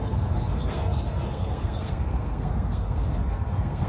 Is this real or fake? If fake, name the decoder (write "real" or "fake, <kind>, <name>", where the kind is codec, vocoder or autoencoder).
fake, codec, SNAC